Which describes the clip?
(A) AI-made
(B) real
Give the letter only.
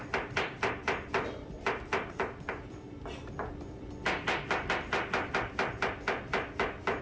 B